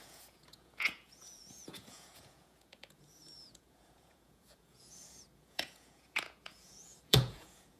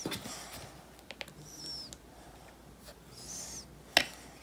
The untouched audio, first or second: second